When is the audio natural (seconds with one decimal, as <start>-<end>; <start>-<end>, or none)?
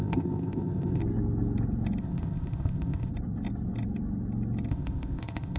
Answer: 1.0-2.0; 3.1-4.7